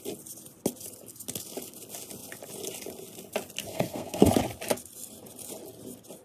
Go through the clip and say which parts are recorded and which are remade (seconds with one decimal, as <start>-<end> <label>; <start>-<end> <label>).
0.0-3.7 recorded; 3.7-4.3 remade; 4.3-6.2 recorded